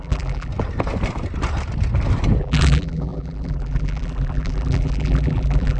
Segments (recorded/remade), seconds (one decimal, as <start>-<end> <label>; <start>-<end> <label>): 0.0-0.5 remade; 0.5-2.4 recorded; 2.4-5.8 remade